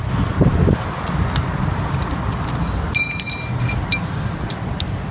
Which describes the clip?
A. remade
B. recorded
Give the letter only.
B